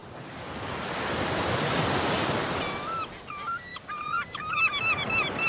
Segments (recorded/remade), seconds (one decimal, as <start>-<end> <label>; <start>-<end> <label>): 0.0-5.5 recorded